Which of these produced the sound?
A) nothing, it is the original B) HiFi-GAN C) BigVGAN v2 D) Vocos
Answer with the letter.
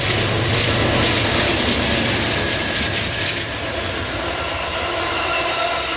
A